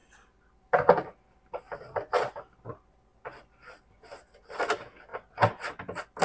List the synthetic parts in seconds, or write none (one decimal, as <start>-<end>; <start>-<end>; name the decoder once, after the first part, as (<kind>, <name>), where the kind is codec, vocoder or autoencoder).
none